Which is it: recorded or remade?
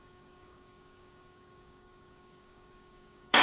remade